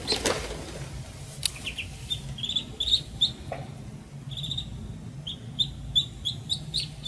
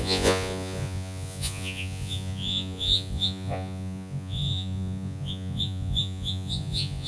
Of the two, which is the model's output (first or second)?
second